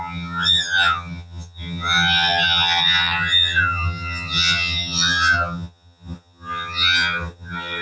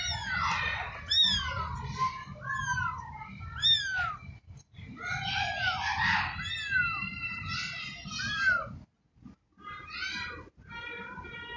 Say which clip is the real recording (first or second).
second